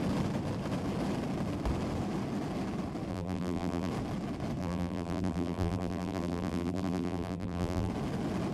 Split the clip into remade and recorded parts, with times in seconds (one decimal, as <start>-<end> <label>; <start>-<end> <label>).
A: 0.0-3.1 recorded; 3.1-3.9 remade; 3.9-4.6 recorded; 4.6-7.9 remade; 7.9-8.5 recorded